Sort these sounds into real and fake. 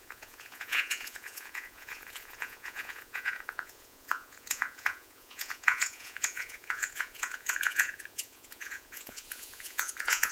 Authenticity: fake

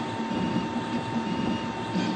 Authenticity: real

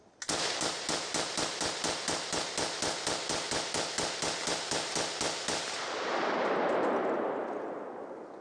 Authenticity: real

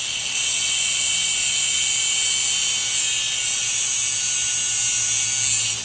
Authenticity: real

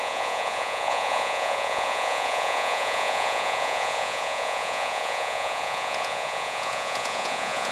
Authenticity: fake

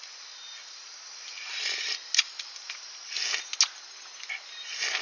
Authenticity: real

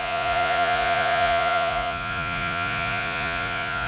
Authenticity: fake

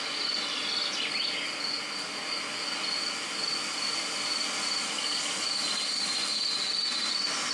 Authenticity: real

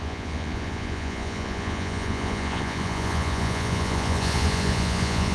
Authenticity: fake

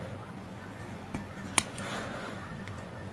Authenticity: fake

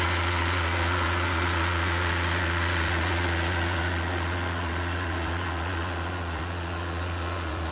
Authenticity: fake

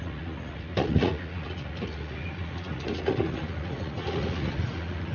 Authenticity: fake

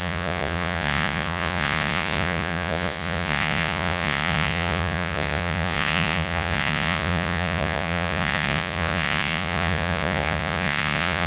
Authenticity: fake